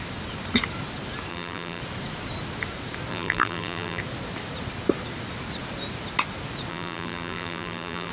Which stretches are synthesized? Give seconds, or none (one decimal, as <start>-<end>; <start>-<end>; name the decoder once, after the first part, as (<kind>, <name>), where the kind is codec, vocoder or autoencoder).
1.3-1.8 (vocoder, BigVGAN v2); 3.1-4.0; 6.7-8.1